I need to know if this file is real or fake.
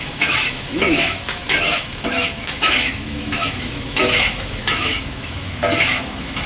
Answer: fake